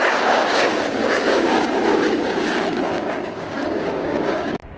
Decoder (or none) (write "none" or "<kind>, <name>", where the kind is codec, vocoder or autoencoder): codec, DAC